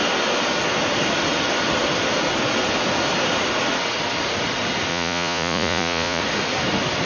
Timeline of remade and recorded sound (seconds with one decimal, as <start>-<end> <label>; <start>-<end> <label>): 0.0-4.9 recorded; 4.9-6.2 remade; 6.2-7.1 recorded

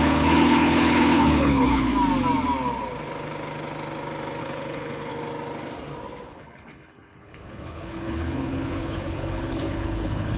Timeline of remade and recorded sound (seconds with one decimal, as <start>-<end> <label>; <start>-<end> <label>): 0.0-1.9 remade; 1.9-4.4 recorded; 4.4-5.1 remade; 5.1-6.3 recorded; 6.3-10.4 remade